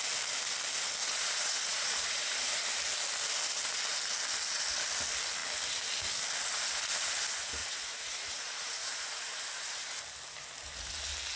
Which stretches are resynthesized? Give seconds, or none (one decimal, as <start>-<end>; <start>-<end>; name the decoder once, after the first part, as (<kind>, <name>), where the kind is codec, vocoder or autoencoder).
1.0-2.6 (vocoder, Vocos); 7.6-9.3